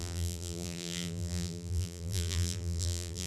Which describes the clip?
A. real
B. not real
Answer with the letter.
B